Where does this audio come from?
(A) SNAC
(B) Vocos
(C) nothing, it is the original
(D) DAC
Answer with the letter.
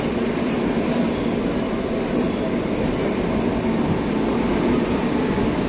C